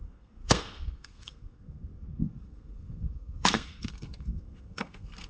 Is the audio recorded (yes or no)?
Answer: no